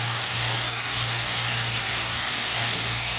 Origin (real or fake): fake